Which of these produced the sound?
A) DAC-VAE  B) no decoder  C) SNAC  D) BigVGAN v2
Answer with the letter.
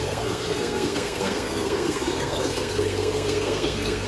C